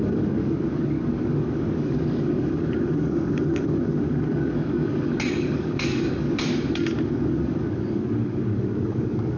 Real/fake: fake